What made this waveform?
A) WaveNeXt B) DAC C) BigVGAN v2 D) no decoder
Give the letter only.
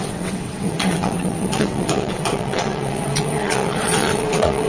A